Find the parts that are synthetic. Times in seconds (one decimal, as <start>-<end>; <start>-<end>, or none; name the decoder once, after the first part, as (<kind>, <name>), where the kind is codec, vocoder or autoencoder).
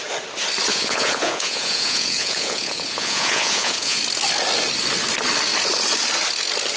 0.7-4.0 (vocoder, Vocos)